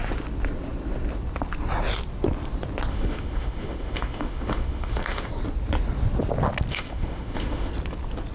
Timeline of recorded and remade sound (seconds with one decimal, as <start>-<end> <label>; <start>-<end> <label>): 0.0-2.9 recorded; 2.9-5.3 remade; 5.3-6.7 recorded; 6.7-7.7 remade; 7.7-8.3 recorded

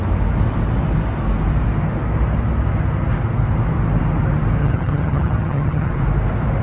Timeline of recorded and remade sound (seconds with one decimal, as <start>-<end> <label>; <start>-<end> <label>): 0.0-4.6 recorded; 4.6-5.9 remade; 5.9-6.6 recorded

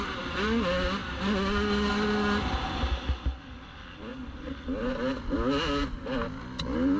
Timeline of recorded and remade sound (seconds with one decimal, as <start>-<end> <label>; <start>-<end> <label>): 0.0-7.0 recorded

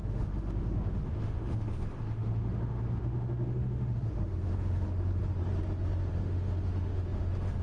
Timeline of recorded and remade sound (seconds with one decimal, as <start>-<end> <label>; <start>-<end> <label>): 0.0-5.2 remade; 5.2-6.1 recorded; 6.1-7.6 remade

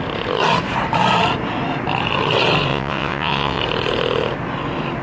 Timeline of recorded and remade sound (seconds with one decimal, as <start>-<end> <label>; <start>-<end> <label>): 0.0-2.7 recorded; 2.7-3.6 remade; 3.6-5.0 recorded